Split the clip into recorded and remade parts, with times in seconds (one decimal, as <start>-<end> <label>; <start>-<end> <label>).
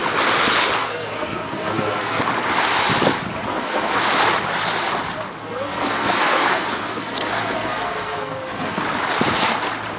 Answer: 0.0-0.8 recorded; 0.8-2.2 remade; 2.2-3.5 recorded; 3.5-4.0 remade; 4.0-5.4 recorded; 5.4-8.8 remade; 8.8-10.0 recorded